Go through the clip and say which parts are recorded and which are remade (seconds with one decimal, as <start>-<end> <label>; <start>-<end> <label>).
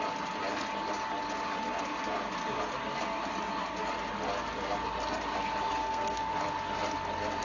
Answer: 0.0-5.8 recorded; 5.8-6.3 remade; 6.3-7.4 recorded